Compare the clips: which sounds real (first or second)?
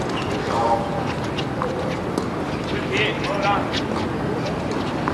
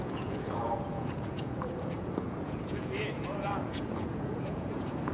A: first